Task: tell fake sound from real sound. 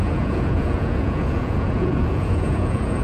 fake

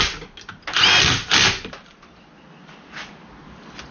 real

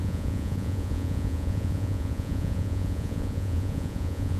fake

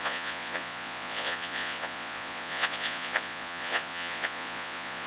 fake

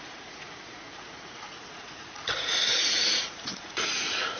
fake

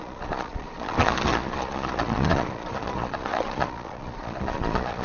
fake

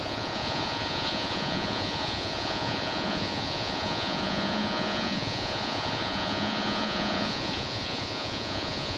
fake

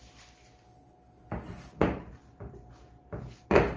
real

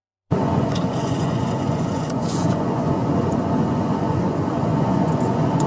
fake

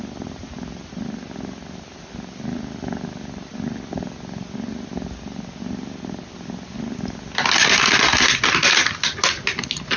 real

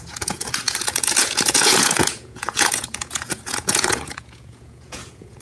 fake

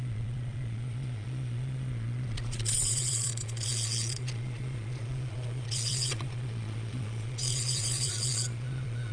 fake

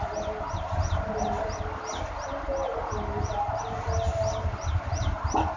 real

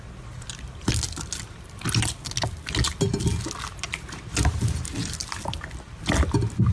real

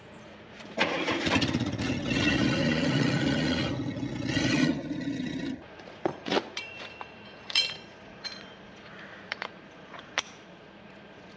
fake